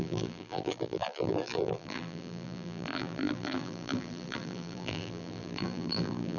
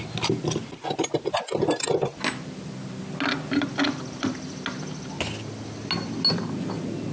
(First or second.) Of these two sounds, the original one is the second